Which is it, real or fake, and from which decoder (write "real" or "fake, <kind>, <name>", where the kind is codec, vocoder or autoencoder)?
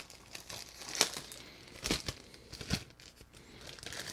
real